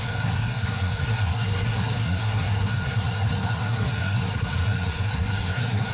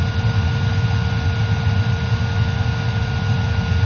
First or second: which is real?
second